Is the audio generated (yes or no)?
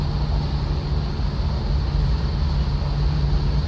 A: no